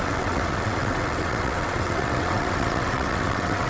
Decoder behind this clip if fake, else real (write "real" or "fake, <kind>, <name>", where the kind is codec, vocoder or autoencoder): fake, vocoder, WaveNeXt